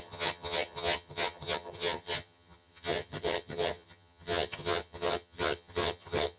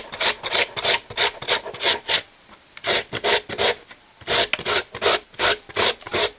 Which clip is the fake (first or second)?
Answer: first